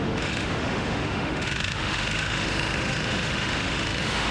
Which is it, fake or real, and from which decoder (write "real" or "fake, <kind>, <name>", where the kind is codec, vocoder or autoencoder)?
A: fake, autoencoder, DAC-VAE